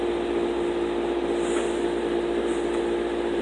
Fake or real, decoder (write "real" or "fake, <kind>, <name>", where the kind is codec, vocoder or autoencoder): real